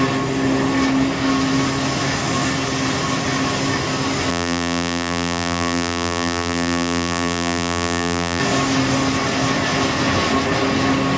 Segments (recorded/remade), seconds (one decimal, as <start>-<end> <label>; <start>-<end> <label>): 0.0-4.3 recorded; 4.3-8.4 remade; 8.4-11.2 recorded